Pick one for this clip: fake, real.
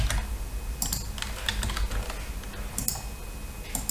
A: real